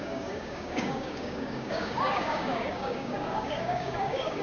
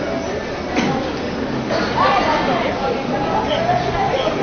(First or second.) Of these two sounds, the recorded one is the second